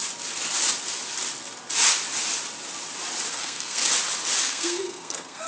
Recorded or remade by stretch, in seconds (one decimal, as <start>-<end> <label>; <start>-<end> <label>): 0.0-3.3 recorded; 3.3-3.8 remade; 3.8-4.4 recorded; 4.4-5.5 remade